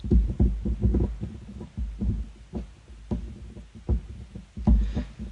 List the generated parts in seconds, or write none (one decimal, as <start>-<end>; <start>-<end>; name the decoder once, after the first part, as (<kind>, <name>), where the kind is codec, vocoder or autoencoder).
none